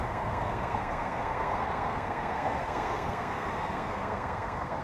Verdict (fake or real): fake